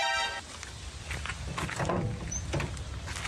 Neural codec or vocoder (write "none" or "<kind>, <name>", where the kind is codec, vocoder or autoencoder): none